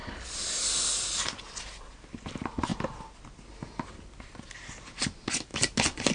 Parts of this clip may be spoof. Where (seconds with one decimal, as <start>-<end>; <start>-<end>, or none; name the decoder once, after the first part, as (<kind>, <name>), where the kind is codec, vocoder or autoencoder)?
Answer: none